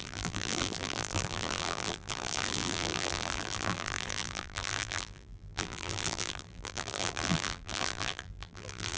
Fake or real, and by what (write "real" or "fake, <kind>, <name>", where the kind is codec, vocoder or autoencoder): fake, vocoder, BigVGAN v2